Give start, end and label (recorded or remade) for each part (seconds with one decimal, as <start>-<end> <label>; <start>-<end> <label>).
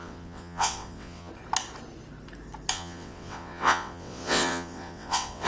0.0-1.3 remade; 1.3-2.7 recorded; 2.7-5.5 remade